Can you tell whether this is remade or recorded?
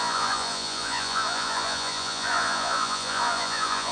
remade